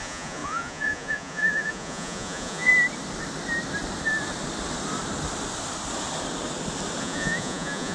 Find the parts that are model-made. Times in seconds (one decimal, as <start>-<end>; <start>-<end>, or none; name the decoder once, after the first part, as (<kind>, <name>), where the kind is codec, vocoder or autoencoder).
0.0-2.7 (vocoder, Vocos); 7.0-7.9